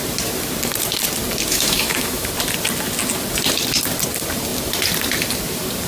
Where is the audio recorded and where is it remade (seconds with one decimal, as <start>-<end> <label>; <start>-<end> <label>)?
0.0-1.5 recorded; 1.5-2.3 remade; 2.3-5.9 recorded